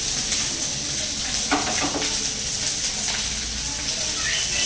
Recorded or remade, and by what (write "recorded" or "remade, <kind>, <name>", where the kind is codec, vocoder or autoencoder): recorded